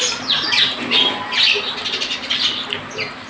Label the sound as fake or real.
real